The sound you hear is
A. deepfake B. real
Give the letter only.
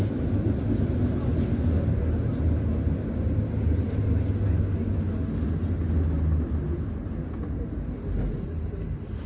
B